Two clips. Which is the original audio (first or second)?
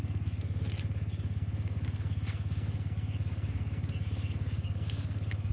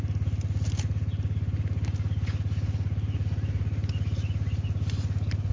second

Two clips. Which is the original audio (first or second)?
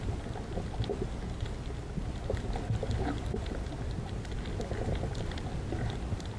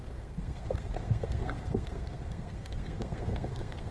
first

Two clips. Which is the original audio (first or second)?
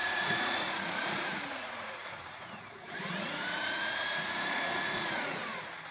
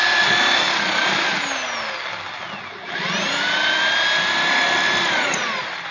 second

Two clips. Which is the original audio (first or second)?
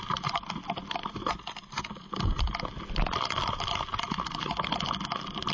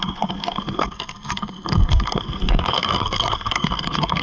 first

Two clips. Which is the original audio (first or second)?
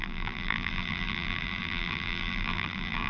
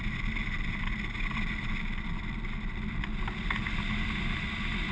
second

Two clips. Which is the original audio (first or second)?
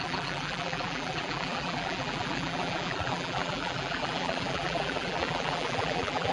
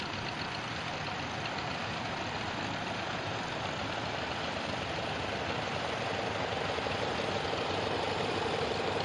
second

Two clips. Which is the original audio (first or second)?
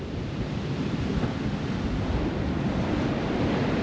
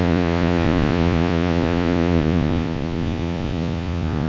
first